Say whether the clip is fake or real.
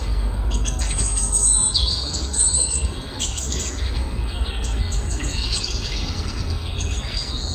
fake